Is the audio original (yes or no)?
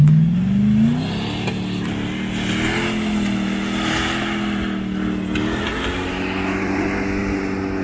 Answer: yes